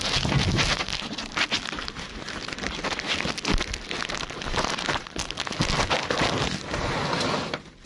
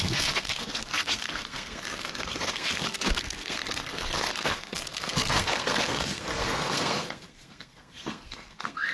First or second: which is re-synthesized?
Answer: second